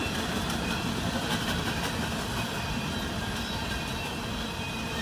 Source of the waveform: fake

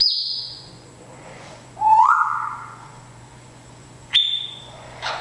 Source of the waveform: fake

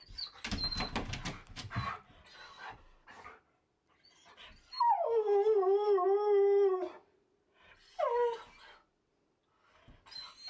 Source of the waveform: real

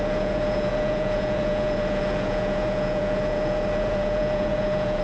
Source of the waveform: fake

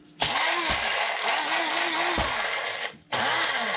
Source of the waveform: real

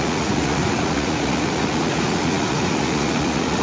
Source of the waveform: fake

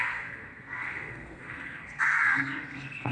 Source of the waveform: fake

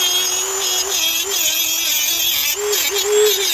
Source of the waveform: real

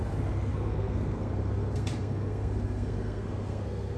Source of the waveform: fake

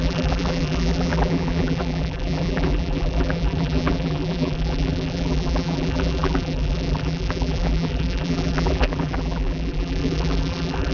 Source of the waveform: fake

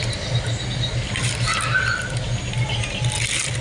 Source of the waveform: real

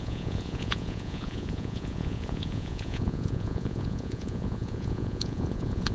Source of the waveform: fake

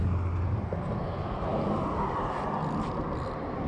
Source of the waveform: real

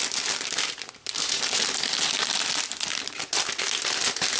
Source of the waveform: real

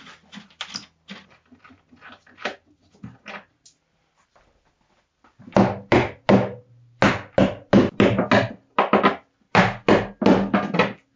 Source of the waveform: real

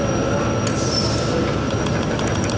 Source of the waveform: real